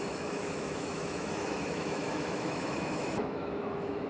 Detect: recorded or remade remade